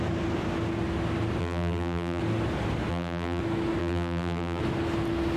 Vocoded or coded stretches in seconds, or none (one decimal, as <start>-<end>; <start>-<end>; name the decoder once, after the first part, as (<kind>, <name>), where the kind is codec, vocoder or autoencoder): 1.4-2.2 (vocoder, BigVGAN v2); 2.9-3.4; 3.8-4.6